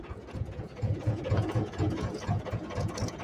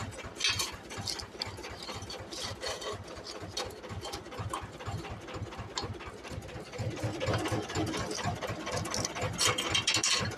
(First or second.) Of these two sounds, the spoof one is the first